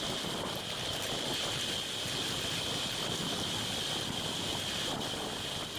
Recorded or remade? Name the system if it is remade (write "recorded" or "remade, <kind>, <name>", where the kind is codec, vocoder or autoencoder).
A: recorded